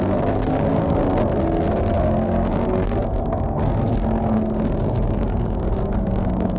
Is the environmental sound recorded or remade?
remade